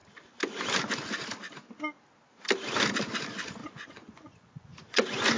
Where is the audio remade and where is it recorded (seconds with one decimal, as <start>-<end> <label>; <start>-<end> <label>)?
0.0-3.6 recorded; 3.6-5.4 remade